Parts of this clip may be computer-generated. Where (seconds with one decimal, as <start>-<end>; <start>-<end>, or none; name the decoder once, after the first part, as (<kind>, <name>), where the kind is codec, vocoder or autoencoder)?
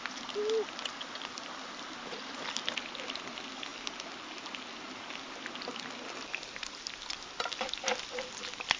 none